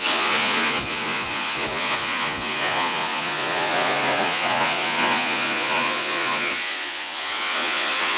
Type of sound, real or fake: fake